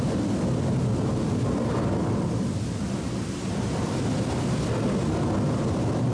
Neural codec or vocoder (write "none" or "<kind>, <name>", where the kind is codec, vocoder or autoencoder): none